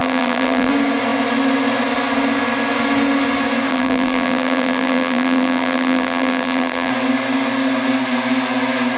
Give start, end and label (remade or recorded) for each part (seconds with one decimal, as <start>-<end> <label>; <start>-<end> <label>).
0.0-0.7 remade; 0.7-3.7 recorded; 3.7-6.9 remade; 6.9-9.0 recorded